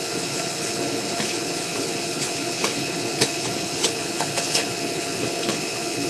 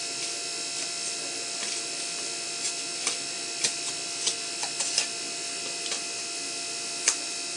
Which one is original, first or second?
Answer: second